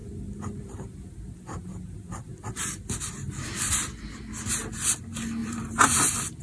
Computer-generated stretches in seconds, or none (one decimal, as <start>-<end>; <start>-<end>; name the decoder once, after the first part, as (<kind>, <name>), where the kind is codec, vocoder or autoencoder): 0.0-3.8 (vocoder, BigVGAN v2); 5.4-6.0